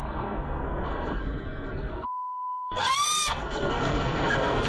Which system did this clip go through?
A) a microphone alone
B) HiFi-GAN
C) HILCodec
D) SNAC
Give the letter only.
D